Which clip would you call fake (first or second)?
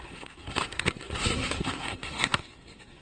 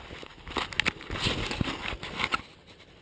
first